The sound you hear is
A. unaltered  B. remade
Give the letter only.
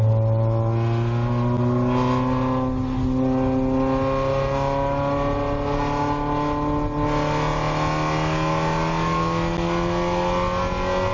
A